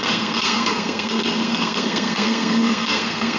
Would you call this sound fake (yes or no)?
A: yes